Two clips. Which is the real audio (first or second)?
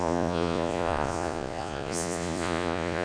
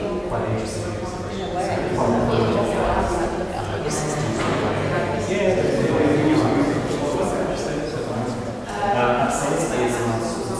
second